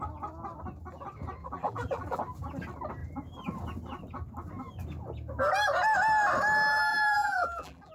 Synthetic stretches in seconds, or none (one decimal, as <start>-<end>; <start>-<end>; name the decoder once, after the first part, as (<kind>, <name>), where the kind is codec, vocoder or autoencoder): 1.4-2.2 (vocoder, BigVGAN v2); 6.9-7.9